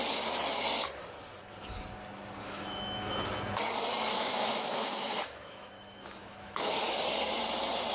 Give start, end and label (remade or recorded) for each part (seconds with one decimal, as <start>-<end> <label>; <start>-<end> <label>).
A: 0.0-2.4 recorded; 2.4-3.1 remade; 3.1-4.1 recorded; 4.1-6.7 remade; 6.7-7.9 recorded